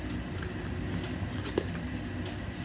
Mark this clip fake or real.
real